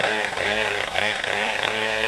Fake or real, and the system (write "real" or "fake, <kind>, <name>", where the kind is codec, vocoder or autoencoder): fake, codec, SNAC